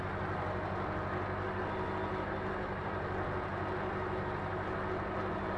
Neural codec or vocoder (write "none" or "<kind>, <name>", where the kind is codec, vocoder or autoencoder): none